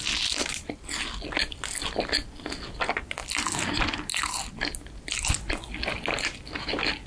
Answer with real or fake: real